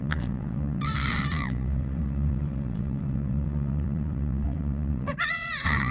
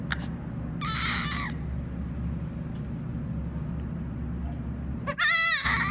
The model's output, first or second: first